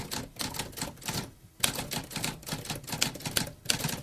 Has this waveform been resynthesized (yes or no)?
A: no